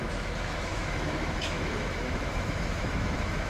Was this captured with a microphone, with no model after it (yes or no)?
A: no